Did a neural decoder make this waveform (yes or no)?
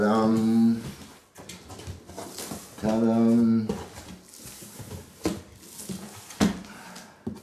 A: no